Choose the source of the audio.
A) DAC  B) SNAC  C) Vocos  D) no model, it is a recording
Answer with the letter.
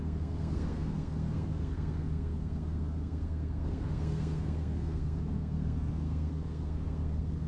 B